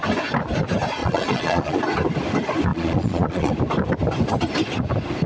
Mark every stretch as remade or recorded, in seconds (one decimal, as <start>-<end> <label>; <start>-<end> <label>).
0.0-1.0 recorded; 1.0-1.8 remade; 1.8-2.7 recorded; 2.7-3.5 remade; 3.5-5.3 recorded